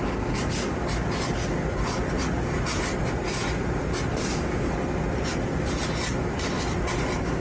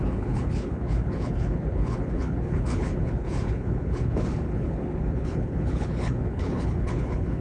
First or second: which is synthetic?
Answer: second